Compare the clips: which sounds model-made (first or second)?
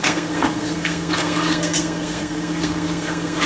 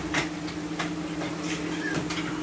first